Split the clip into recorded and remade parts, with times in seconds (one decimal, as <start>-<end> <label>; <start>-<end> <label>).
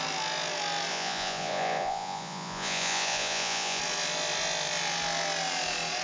0.0-0.9 recorded; 0.9-3.8 remade; 3.8-6.0 recorded